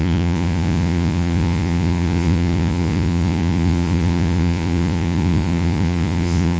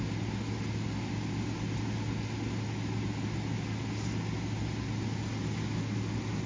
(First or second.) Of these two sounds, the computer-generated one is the first